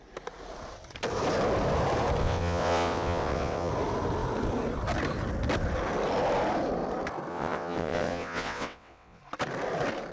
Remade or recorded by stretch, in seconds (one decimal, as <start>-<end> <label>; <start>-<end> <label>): 0.0-2.2 recorded; 2.2-3.7 remade; 3.7-7.3 recorded; 7.3-9.2 remade; 9.2-10.1 recorded